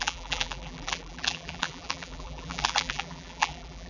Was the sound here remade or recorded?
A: remade